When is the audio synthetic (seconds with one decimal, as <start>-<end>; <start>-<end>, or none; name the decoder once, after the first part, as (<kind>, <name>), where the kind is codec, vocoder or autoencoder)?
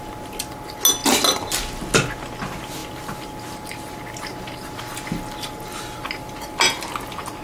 none